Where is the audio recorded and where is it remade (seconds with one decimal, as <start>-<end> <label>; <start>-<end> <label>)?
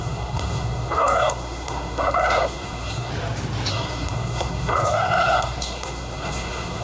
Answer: 0.0-3.1 remade; 3.1-3.7 recorded; 3.7-6.8 remade